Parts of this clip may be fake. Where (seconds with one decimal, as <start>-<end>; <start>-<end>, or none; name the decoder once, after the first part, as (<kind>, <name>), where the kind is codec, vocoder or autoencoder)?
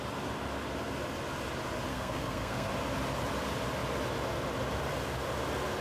1.9-2.7 (codec, SNAC)